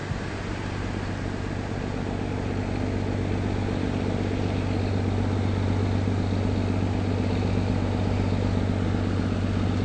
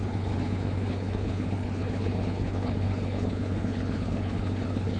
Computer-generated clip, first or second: second